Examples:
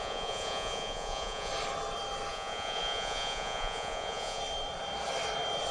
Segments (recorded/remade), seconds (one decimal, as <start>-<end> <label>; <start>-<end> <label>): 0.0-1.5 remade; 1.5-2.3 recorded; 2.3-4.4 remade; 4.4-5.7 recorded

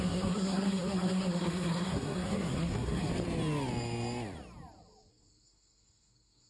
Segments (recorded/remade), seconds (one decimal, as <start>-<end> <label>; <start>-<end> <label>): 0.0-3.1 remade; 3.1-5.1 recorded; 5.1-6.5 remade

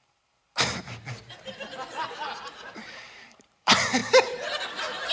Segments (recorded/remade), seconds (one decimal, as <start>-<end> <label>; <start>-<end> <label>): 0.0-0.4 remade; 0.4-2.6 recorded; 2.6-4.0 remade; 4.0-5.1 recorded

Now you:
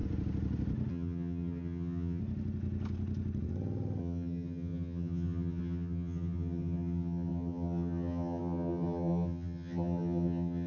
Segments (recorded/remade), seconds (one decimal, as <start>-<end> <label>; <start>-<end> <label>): 0.0-0.9 recorded; 0.9-2.2 remade; 2.2-4.0 recorded; 4.0-10.7 remade

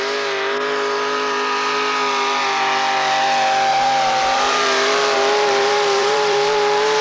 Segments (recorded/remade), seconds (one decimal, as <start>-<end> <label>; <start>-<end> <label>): 0.0-3.7 recorded; 3.7-7.0 remade

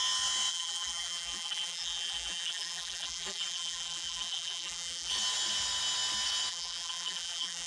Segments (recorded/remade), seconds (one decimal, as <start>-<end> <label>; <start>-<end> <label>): 0.0-0.5 recorded; 0.5-5.1 remade; 5.1-6.5 recorded; 6.5-7.7 remade

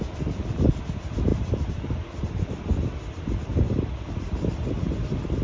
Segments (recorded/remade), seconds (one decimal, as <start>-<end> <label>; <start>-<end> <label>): 0.0-5.4 recorded